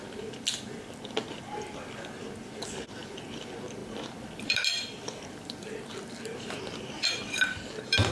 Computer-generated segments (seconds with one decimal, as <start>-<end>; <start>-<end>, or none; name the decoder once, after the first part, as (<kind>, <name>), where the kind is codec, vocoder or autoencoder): 3.8-5.7 (vocoder, BigVGAN v2)